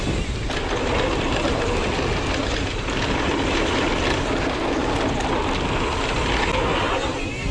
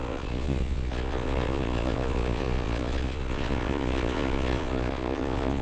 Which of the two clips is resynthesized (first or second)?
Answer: second